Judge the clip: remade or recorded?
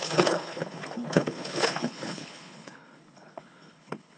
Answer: remade